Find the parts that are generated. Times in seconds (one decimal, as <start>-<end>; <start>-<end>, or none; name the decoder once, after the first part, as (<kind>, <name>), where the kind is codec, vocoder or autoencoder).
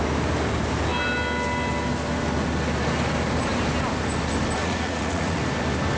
4.6-5.4 (vocoder, Vocos)